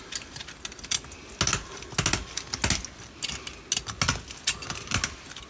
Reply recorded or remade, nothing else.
recorded